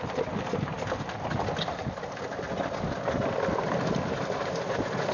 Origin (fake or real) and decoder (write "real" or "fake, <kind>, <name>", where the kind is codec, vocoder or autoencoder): real